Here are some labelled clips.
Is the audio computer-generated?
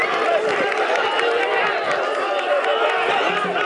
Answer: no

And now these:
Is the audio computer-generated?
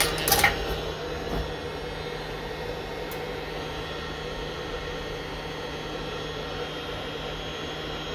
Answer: no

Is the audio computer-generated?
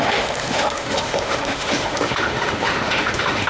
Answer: yes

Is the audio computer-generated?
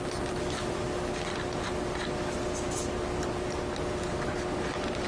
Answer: no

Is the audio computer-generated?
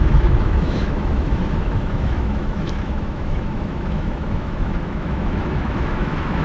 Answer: yes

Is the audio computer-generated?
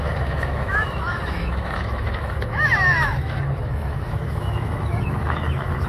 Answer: yes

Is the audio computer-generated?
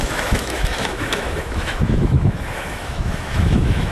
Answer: yes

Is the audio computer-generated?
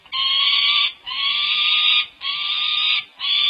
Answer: no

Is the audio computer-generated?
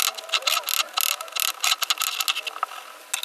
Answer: no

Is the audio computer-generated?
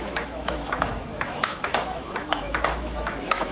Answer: yes